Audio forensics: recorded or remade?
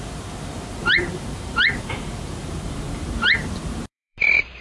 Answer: remade